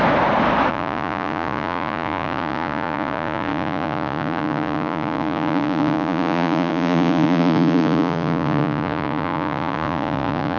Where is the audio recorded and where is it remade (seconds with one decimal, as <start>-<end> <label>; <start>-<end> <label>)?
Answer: 0.0-0.7 recorded; 0.7-10.6 remade

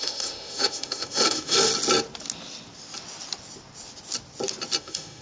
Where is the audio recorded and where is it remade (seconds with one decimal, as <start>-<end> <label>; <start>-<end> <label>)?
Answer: 0.0-1.7 remade; 1.7-4.8 recorded; 4.8-5.2 remade

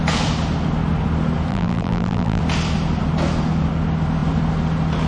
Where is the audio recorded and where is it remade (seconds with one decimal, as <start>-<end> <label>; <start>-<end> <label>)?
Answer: 0.0-1.5 recorded; 1.5-2.4 remade; 2.4-5.1 recorded

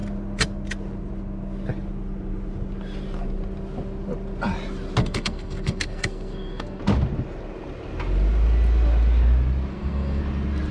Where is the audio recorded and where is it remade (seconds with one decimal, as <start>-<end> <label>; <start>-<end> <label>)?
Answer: 0.0-5.0 recorded; 5.0-6.8 remade; 6.8-9.7 recorded; 9.7-10.2 remade; 10.2-10.7 recorded

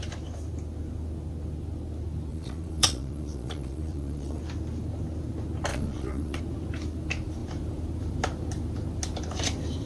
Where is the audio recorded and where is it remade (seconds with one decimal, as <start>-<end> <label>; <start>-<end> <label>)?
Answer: 0.0-2.3 recorded; 2.3-4.4 remade; 4.4-5.7 recorded; 5.7-6.4 remade; 6.4-9.9 recorded

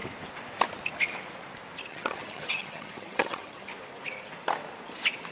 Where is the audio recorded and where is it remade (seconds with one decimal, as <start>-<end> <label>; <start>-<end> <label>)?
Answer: 0.0-1.9 recorded; 1.9-3.7 remade; 3.7-5.3 recorded

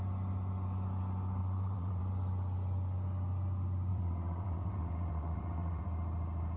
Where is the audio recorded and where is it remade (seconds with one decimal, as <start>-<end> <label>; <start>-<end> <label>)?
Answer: 0.0-1.4 recorded; 1.4-2.0 remade; 2.0-3.9 recorded; 3.9-5.8 remade; 5.8-6.6 recorded

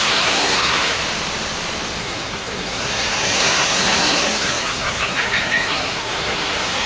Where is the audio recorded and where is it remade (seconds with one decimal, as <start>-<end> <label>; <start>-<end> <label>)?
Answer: 0.0-1.0 remade; 1.0-2.0 recorded; 2.0-6.9 remade